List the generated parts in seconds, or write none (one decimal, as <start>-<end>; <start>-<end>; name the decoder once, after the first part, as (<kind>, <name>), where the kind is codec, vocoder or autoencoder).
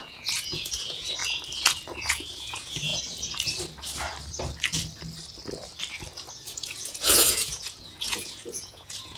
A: 0.0-1.2 (vocoder, Vocos); 2.1-2.9; 6.3-9.2